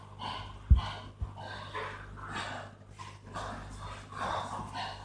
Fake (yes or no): no